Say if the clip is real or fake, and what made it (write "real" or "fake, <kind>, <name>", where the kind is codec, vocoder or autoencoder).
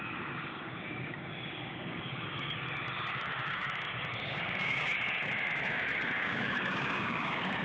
fake, codec, DAC